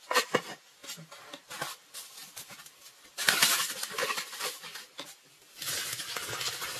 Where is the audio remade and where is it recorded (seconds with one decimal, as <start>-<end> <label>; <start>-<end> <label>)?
0.0-0.8 remade; 0.8-1.8 recorded; 1.8-6.8 remade